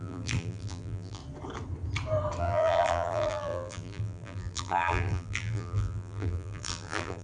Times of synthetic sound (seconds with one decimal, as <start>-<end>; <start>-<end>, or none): 0.0-1.2; 2.4-7.2